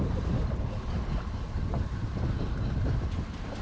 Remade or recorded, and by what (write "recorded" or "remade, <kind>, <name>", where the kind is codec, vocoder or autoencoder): recorded